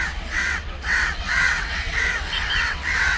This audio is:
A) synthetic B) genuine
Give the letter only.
A